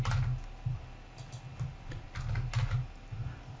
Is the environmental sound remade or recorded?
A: recorded